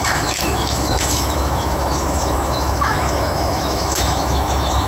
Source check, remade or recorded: remade